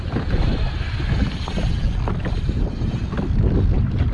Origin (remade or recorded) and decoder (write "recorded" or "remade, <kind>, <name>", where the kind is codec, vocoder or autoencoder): recorded